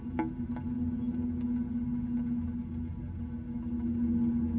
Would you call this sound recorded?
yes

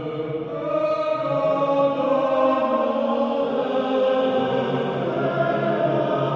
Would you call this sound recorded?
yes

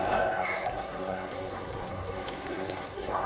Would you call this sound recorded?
no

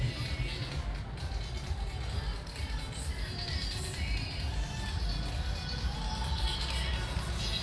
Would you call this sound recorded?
yes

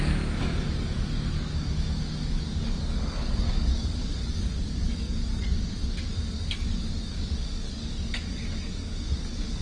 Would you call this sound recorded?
no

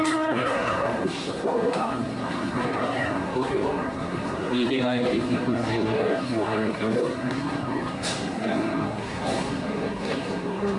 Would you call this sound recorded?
no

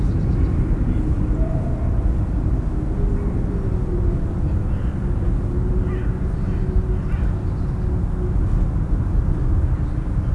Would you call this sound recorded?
yes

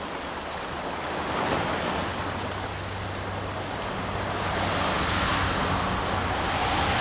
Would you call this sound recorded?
yes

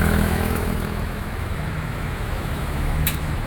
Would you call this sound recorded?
no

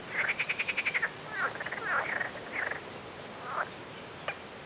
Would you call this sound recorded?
yes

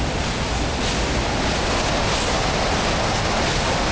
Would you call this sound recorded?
yes